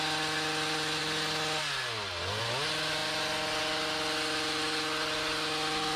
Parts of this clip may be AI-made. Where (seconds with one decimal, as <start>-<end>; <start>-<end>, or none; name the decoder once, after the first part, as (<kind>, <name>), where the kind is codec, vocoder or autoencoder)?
none